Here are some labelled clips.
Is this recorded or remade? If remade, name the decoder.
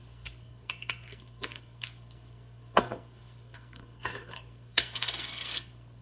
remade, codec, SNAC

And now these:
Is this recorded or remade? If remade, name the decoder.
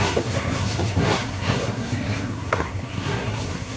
remade, codec, SNAC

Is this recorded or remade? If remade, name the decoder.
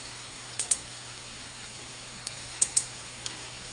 remade, codec, SNAC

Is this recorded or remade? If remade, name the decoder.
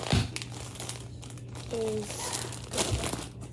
recorded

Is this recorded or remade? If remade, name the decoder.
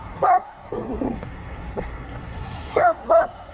remade, codec, SNAC